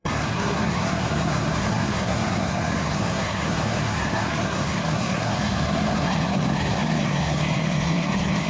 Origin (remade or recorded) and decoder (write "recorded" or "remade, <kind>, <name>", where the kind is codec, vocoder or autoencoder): remade, codec, SNAC